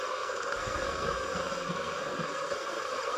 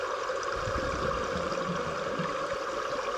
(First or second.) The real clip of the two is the second